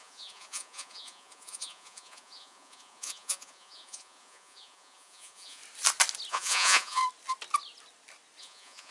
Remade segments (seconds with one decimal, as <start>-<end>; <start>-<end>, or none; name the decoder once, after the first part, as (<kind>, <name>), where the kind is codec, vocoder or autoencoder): 0.0-5.6 (vocoder, Vocos); 6.3-7.0; 8.4-8.9